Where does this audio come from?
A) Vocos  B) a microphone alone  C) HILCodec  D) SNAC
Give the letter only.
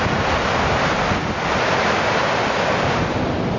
B